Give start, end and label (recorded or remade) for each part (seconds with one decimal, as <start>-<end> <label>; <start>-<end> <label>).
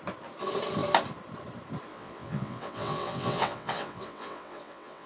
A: 0.0-1.9 recorded; 1.9-5.1 remade